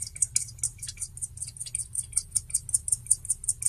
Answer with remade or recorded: recorded